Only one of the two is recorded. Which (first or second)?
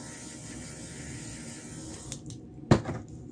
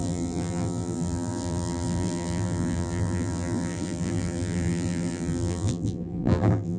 first